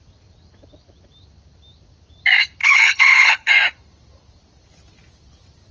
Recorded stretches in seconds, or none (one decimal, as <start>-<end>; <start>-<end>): 0.0-2.6; 3.5-5.7